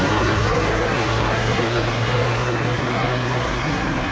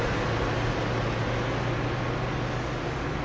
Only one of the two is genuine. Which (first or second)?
second